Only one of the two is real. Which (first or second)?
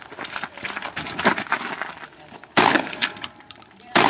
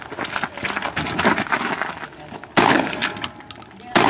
second